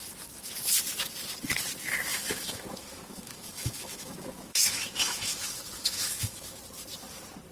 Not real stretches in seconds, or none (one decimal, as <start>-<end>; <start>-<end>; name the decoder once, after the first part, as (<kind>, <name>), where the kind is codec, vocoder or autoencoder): 2.1-6.6 (autoencoder, DAC-VAE)